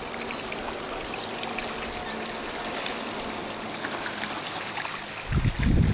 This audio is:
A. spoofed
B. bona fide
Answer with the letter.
B